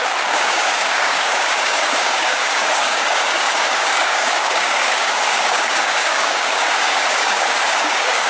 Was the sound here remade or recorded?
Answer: remade